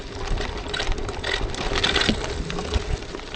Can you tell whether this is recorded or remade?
recorded